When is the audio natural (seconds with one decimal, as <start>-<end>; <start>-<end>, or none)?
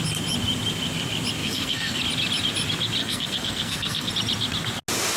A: 0.0-1.4; 2.0-3.0; 4.1-5.2